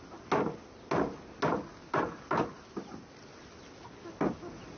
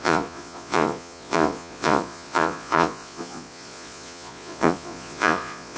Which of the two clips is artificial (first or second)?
second